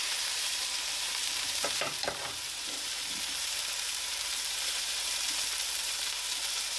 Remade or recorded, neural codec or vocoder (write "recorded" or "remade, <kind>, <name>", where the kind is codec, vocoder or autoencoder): remade, vocoder, BigVGAN v2